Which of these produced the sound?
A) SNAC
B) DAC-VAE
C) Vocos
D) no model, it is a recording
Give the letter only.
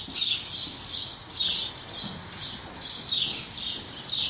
D